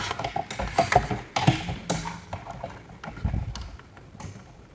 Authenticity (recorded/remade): recorded